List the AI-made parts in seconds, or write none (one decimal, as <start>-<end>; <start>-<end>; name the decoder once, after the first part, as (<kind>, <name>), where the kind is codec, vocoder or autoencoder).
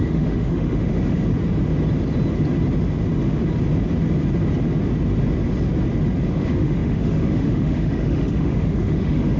0.0-1.3 (autoencoder, DAC-VAE); 6.3-9.4